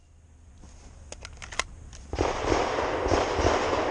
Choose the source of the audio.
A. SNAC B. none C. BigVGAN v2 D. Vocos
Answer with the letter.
B